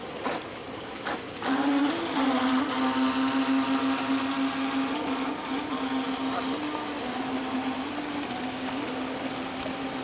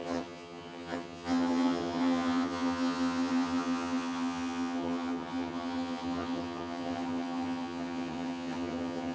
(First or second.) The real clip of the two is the first